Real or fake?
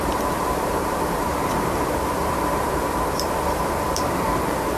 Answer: fake